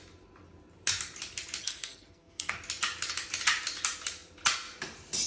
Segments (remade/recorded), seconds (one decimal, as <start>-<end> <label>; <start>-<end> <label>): 0.0-1.6 recorded; 1.6-2.5 remade; 2.5-5.3 recorded